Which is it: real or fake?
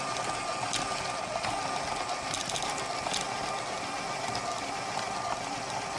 real